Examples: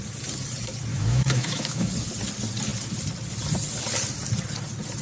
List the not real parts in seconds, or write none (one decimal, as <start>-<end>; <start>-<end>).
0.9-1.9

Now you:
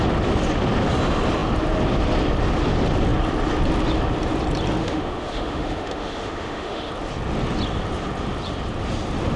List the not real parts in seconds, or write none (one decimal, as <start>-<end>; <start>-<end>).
4.8-6.9

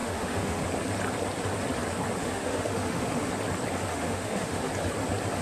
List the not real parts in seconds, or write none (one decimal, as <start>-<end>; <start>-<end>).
0.0-0.6; 2.2-3.3; 3.9-4.7